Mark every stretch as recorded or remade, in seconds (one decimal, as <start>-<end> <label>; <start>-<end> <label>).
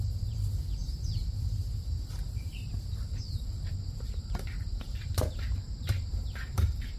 0.0-7.0 remade